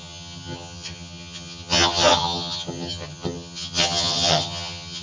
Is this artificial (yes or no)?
yes